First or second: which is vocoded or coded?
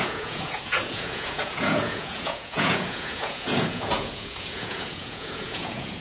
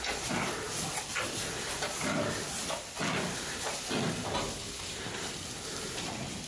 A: first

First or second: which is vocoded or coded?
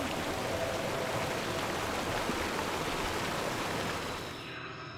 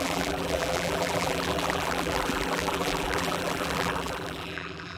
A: second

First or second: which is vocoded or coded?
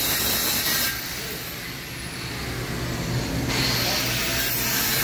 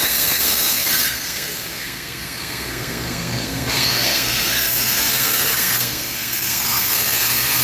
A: second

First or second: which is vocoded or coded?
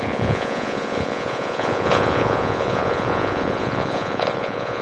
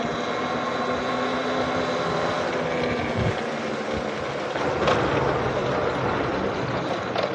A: first